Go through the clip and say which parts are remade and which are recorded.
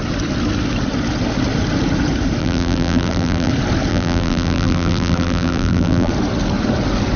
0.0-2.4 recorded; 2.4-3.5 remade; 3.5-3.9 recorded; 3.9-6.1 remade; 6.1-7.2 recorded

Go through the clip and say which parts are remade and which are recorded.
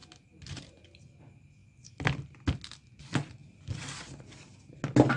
0.0-5.2 recorded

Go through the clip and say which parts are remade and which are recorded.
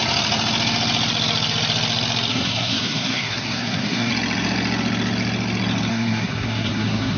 0.0-2.3 recorded; 2.3-4.1 remade; 4.1-5.9 recorded; 5.9-7.2 remade